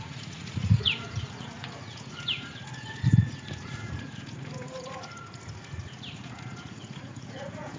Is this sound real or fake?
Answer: fake